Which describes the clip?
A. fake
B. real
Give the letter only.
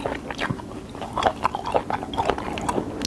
B